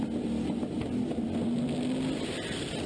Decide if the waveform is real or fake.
real